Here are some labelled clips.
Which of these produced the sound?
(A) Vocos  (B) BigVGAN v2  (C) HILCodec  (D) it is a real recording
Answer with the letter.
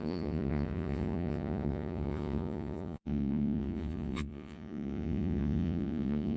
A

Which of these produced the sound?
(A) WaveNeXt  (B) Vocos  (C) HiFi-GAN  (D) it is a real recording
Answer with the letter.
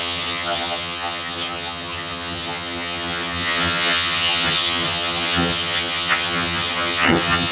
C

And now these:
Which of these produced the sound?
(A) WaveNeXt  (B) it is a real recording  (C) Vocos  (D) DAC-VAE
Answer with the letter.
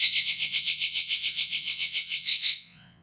A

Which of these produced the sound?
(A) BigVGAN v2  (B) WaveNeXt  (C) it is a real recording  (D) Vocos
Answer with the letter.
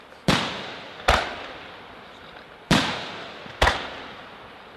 A